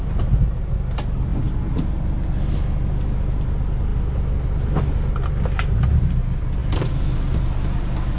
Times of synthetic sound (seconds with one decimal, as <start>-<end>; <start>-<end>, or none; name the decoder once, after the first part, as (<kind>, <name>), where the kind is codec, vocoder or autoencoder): 3.9-5.1 (vocoder, BigVGAN v2); 6.6-7.4